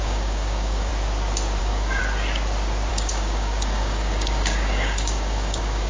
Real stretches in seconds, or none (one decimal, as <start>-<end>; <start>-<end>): 0.9-1.6; 2.0-2.9